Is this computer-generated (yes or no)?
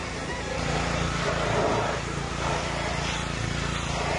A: yes